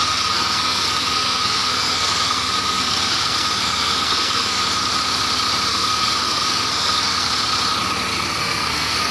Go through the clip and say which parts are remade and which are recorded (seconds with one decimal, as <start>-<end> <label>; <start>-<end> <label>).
0.0-4.6 remade; 4.6-5.7 recorded; 5.7-7.3 remade; 7.3-8.1 recorded; 8.1-9.1 remade